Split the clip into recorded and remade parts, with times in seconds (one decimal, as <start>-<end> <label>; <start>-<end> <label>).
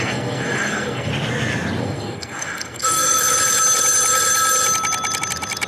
0.0-1.1 remade; 1.1-1.8 recorded; 1.8-3.2 remade; 3.2-5.7 recorded